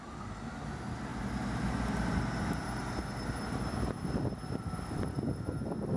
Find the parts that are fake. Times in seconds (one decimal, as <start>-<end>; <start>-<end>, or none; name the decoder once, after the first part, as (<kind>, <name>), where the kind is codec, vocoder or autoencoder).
0.0-1.1 (vocoder, BigVGAN v2); 4.6-6.0